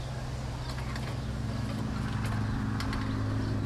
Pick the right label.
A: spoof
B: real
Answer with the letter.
B